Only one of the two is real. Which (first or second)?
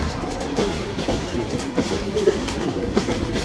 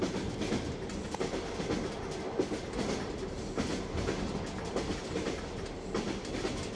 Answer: second